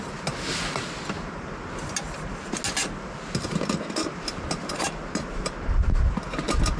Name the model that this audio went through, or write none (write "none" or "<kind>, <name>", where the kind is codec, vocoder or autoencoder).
none